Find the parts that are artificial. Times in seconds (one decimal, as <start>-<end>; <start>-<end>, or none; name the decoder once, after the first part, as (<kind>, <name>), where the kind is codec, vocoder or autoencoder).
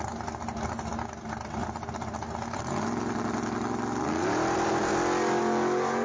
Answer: none